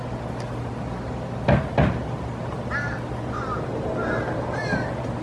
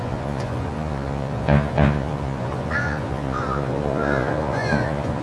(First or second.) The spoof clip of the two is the second